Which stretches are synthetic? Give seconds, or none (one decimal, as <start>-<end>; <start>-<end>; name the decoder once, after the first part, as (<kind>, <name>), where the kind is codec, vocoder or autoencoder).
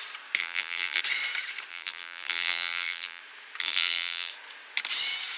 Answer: 0.4-1.0 (vocoder, BigVGAN v2); 1.7-3.2; 3.6-4.3